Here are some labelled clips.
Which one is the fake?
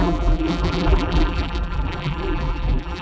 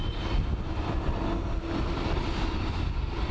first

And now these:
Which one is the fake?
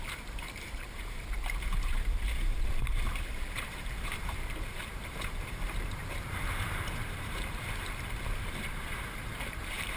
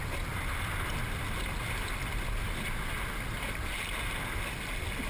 first